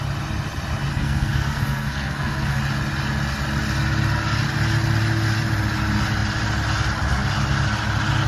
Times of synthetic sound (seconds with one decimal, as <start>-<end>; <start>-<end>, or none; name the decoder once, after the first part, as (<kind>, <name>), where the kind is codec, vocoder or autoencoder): 0.9-2.6 (codec, SNAC)